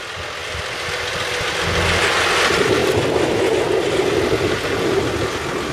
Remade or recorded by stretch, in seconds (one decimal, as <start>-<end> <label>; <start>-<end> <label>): 0.0-0.4 recorded; 0.4-1.1 remade; 1.1-5.7 recorded